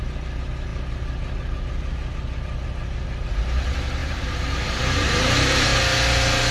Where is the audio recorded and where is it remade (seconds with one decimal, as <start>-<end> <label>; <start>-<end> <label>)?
0.0-6.5 recorded